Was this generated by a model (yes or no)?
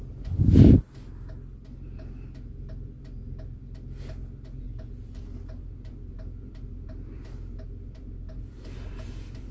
no